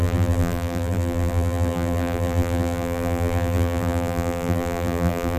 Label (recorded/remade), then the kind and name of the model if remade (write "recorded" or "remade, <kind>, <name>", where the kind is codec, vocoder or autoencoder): remade, vocoder, BigVGAN v2